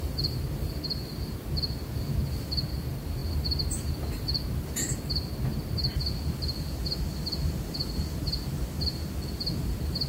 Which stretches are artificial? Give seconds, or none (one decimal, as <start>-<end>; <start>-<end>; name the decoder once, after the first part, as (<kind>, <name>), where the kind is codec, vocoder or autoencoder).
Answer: none